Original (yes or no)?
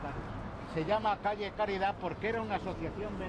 yes